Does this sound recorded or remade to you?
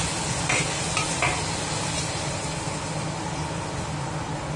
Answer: recorded